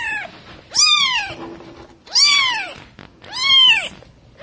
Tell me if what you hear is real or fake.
real